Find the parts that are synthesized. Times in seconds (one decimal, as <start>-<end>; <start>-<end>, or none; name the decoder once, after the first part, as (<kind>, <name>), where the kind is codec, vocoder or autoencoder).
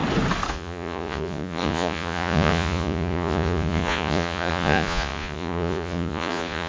0.5-6.7 (vocoder, Vocos)